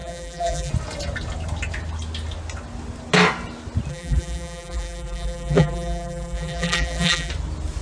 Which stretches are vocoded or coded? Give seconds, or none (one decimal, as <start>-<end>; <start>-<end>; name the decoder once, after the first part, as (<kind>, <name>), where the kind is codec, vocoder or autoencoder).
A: 0.0-0.7 (vocoder, BigVGAN v2); 3.9-7.3